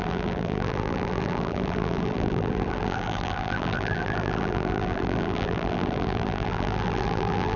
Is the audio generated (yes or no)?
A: yes